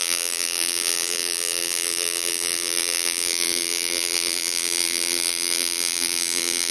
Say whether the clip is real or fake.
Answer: fake